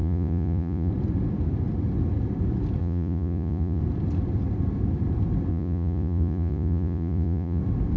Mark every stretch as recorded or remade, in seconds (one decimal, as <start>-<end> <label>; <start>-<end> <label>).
0.0-0.9 remade; 0.9-2.8 recorded; 2.8-3.8 remade; 3.8-5.5 recorded; 5.5-7.6 remade; 7.6-8.0 recorded